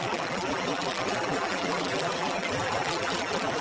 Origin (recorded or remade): remade